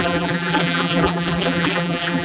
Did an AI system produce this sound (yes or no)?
yes